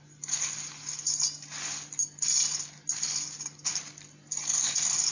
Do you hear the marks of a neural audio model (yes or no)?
no